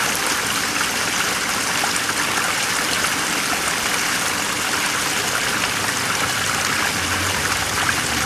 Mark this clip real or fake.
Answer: real